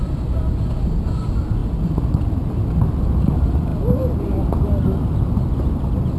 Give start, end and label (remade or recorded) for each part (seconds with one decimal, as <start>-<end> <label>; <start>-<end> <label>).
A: 0.0-6.2 recorded